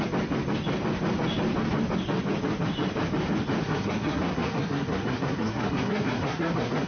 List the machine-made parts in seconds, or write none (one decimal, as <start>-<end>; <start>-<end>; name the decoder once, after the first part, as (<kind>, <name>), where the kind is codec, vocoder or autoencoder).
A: 3.6-6.9 (codec, SNAC)